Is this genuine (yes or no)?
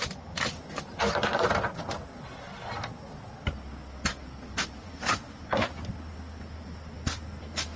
yes